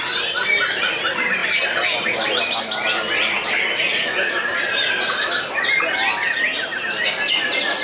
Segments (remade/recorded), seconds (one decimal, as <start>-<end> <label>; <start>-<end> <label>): 0.0-7.8 recorded